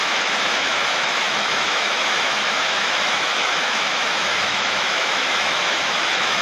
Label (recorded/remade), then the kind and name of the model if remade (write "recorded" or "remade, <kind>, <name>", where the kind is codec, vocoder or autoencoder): remade, autoencoder, DAC-VAE